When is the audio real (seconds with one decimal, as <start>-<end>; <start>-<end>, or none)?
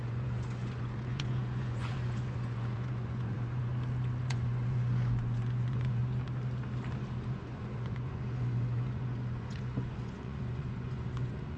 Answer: 3.7-4.3; 6.0-7.3